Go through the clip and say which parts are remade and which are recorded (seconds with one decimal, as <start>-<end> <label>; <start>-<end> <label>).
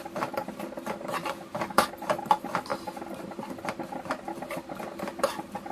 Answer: 0.0-1.2 recorded; 1.2-1.9 remade; 1.9-5.7 recorded